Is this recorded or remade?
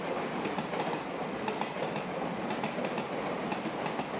recorded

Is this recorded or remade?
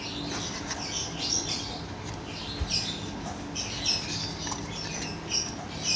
recorded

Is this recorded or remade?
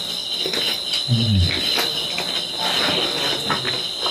recorded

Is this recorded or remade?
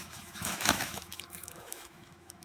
remade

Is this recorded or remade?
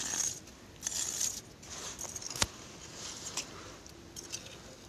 recorded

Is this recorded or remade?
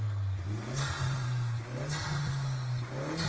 recorded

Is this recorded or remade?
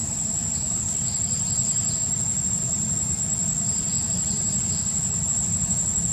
recorded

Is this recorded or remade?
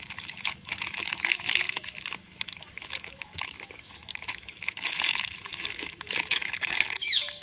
remade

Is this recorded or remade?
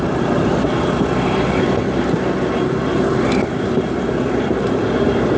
recorded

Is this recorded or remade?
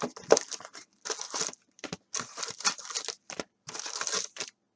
recorded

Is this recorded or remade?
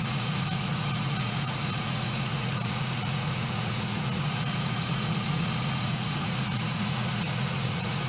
remade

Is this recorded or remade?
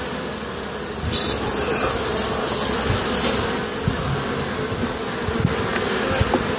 recorded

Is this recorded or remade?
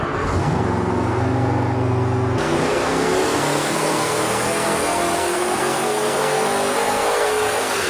remade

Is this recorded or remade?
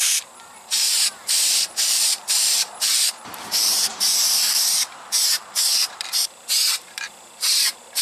remade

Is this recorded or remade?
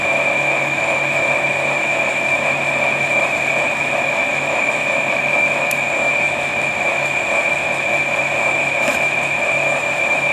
remade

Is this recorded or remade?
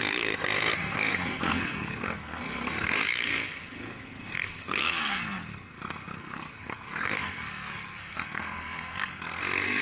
remade